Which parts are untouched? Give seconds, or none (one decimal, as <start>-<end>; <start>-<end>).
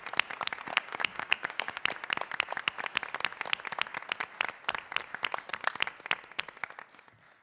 0.0-0.7; 1.8-7.4